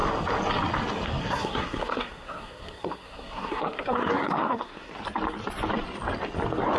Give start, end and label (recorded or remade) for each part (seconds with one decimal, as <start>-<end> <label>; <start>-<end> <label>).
0.0-1.2 recorded; 1.2-4.9 remade; 4.9-6.8 recorded